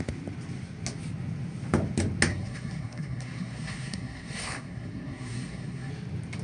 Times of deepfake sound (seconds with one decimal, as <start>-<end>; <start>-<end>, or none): 2.3-5.9